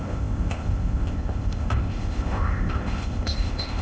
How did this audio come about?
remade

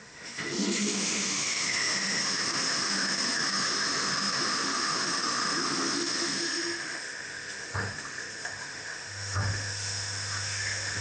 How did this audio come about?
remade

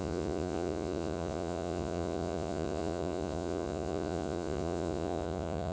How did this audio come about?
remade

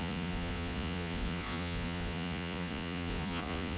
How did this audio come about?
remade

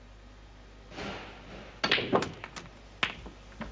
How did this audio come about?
recorded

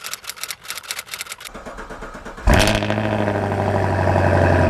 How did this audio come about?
recorded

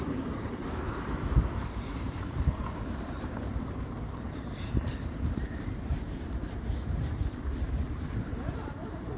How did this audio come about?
remade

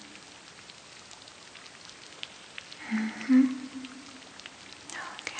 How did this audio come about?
recorded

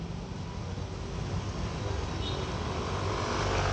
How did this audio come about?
recorded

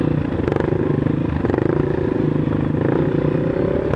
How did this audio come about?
recorded